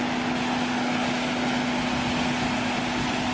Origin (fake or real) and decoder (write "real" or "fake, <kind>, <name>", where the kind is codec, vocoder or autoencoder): real